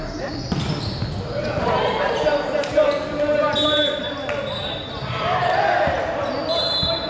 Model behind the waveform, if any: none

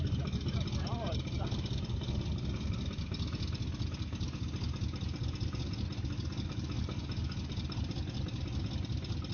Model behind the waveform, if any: none